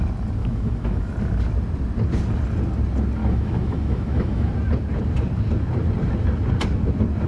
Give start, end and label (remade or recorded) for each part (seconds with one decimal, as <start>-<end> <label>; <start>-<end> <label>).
0.0-0.4 recorded; 0.4-1.1 remade; 1.1-3.2 recorded; 3.2-4.5 remade; 4.5-7.3 recorded